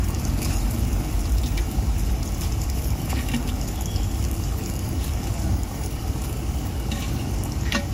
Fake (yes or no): yes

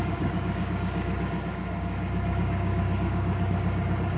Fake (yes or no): yes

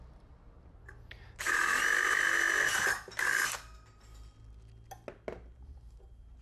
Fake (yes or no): no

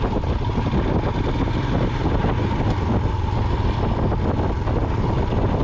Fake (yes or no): no